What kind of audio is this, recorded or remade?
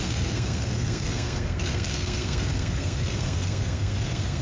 remade